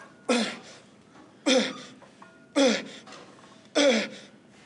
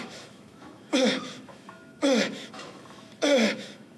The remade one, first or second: second